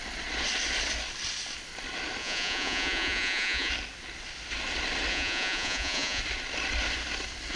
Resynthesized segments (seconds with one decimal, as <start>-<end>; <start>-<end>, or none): 2.2-3.7; 5.1-6.2